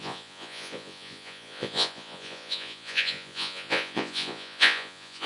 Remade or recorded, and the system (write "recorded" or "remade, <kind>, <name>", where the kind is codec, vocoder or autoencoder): remade, vocoder, Vocos